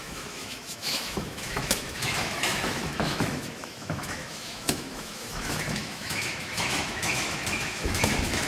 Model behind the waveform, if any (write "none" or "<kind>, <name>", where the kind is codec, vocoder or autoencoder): autoencoder, DAC-VAE